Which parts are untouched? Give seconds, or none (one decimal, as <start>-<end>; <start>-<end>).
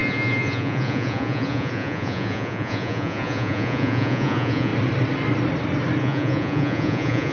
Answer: 4.7-6.0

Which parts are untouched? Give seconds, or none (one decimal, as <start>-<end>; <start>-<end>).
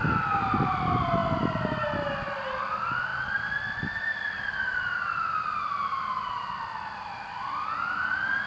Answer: 0.0-8.5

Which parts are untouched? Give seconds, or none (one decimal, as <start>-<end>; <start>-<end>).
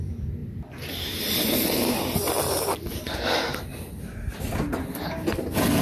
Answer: 0.0-5.8